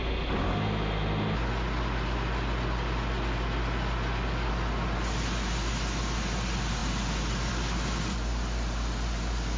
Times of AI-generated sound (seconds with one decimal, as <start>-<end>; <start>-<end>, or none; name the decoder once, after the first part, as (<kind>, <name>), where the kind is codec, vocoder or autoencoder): none